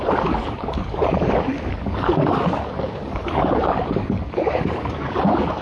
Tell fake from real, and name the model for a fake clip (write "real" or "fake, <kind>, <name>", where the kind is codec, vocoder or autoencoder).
fake, codec, DAC